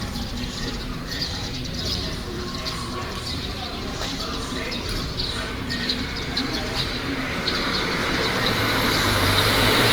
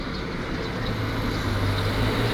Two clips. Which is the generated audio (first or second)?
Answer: first